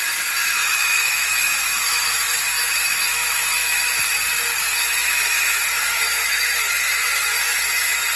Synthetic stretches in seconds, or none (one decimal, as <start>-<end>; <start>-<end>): 0.4-3.9; 4.6-8.2